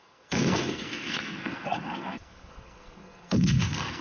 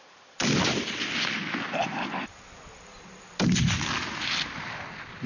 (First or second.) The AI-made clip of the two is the first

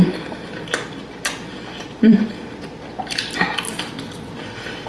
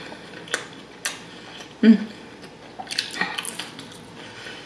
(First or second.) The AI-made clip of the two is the first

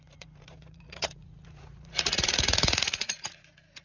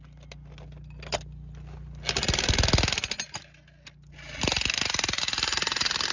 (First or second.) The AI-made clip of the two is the first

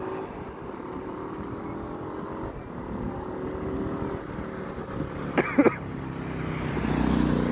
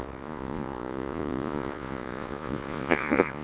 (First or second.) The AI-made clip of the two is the second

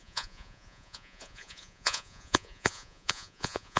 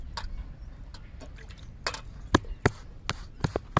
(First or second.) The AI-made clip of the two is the first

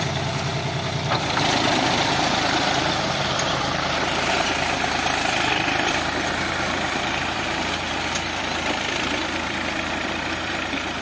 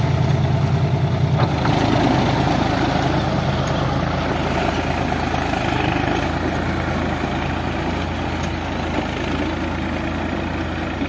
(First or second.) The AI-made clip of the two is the first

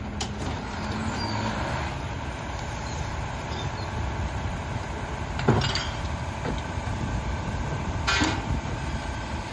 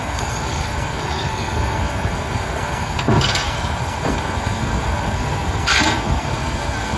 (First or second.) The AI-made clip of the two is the second